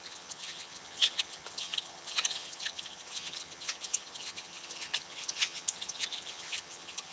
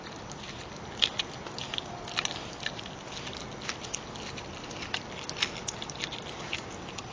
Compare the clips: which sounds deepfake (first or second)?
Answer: first